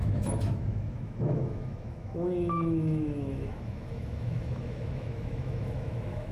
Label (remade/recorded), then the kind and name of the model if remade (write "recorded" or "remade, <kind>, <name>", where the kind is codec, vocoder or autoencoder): remade, autoencoder, DAC-VAE